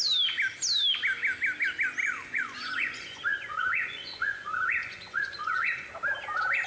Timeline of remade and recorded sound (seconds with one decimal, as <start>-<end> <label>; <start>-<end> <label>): 0.0-2.0 recorded; 2.0-5.9 remade; 5.9-6.7 recorded